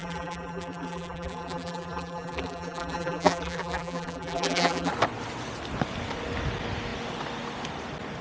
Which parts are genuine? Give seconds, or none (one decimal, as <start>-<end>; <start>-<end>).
4.9-8.2